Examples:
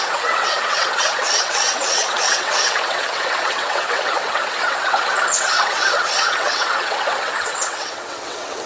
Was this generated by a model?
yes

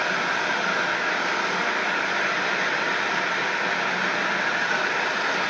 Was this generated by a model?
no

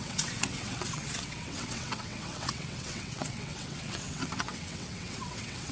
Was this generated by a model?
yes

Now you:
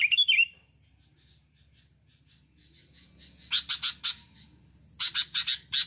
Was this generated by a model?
no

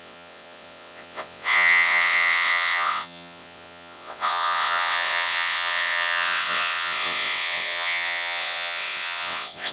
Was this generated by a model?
yes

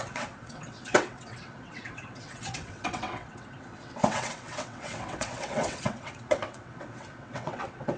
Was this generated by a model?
yes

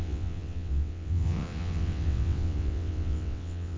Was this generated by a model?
yes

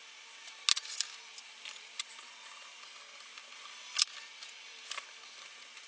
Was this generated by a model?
no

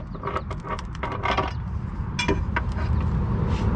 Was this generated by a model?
no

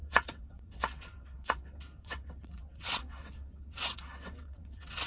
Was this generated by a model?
yes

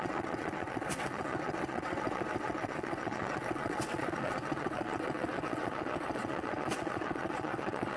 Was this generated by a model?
yes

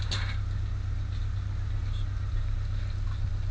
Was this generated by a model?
no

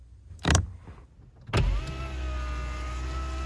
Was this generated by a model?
no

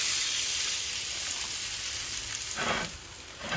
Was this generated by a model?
no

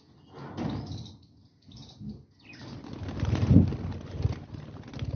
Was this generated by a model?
no